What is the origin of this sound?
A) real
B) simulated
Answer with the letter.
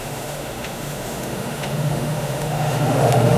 B